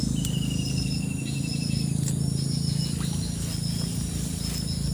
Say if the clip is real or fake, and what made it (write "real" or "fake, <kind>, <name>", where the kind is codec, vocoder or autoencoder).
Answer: real